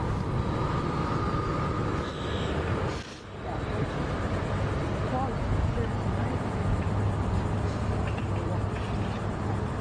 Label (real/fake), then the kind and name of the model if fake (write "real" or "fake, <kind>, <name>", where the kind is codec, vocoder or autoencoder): real